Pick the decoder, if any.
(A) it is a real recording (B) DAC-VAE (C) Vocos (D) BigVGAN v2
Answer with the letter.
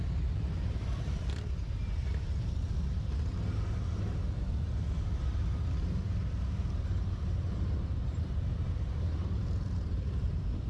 D